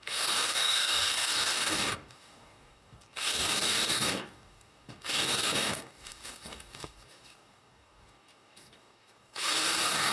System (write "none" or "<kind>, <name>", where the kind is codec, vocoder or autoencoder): codec, DAC